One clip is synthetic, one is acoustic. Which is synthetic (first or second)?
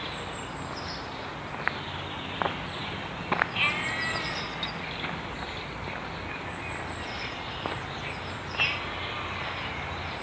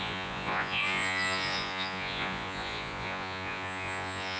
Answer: second